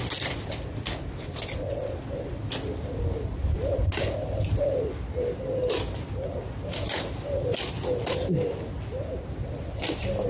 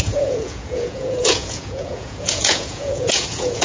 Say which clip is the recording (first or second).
first